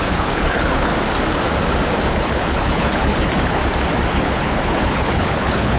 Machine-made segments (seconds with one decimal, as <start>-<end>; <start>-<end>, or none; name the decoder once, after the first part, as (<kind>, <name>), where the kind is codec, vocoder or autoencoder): 0.0-0.9 (codec, HILCodec); 2.1-3.6; 4.1-5.8